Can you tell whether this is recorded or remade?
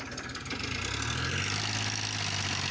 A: recorded